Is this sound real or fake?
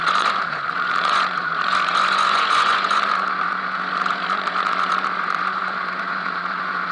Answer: fake